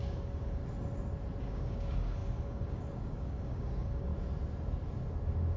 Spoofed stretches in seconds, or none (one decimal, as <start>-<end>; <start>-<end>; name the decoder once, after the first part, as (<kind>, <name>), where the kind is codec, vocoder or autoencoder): 0.0-0.6 (codec, DAC); 1.4-4.1